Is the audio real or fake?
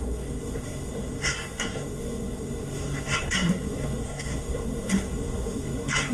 fake